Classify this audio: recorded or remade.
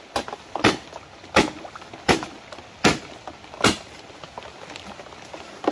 recorded